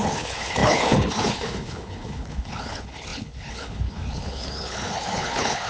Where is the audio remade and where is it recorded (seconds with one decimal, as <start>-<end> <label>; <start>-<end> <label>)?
0.0-5.7 remade